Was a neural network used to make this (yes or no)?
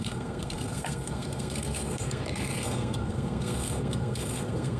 yes